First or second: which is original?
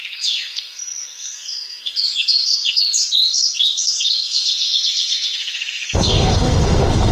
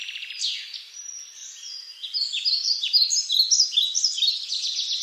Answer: second